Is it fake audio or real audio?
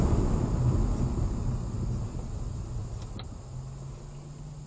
real